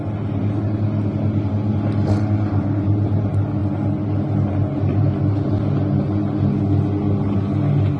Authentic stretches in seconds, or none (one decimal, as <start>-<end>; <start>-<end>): 0.0-8.0